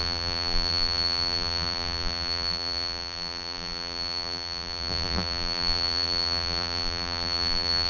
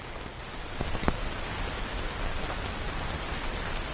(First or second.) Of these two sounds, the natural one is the second